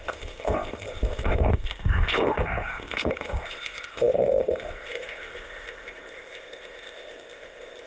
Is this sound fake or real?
fake